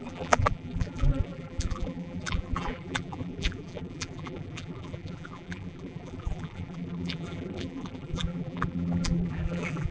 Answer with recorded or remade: remade